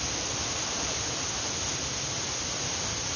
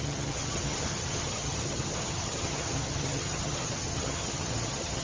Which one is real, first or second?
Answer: first